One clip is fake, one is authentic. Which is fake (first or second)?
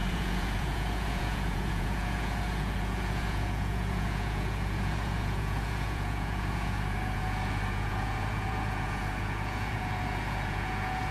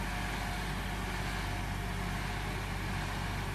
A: first